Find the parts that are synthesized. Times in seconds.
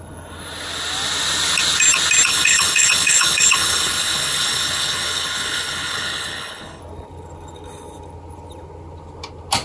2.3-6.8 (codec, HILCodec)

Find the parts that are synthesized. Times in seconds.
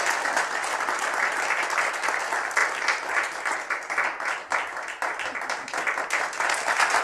none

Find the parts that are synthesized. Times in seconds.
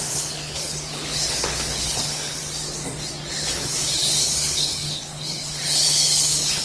0.0-2.4 (codec, HILCodec); 3.3-6.6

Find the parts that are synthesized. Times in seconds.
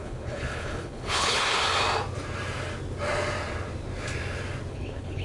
0.0-1.6 (codec, HILCodec); 4.7-5.2